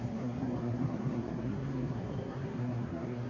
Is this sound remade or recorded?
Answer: remade